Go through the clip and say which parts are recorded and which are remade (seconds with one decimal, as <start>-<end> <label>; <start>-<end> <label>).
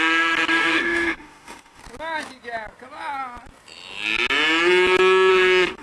0.0-1.8 remade; 1.8-5.3 recorded; 5.3-5.8 remade